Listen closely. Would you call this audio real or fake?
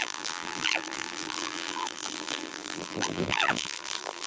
fake